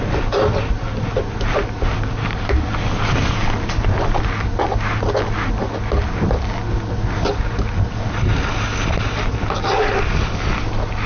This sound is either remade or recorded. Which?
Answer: recorded